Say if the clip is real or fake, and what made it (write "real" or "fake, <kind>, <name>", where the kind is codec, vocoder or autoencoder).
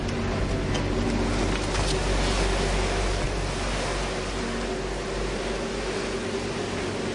real